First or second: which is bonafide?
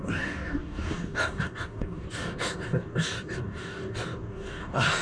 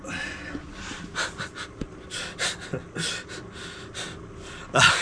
second